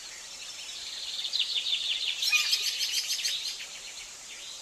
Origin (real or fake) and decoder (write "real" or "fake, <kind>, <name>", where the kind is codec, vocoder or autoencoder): fake, vocoder, BigVGAN v2